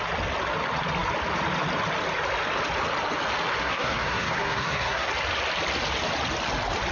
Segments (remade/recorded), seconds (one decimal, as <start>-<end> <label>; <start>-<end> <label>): 0.0-3.6 recorded; 3.6-5.1 remade; 5.1-6.9 recorded